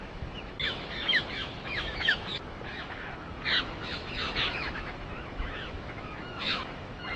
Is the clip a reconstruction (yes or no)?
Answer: yes